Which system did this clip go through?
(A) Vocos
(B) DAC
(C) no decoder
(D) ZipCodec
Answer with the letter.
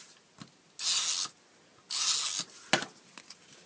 C